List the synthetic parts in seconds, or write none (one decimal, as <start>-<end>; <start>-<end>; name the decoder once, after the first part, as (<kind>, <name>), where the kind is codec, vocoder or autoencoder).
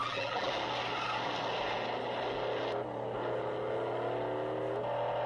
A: 0.0-0.5 (vocoder, BigVGAN v2)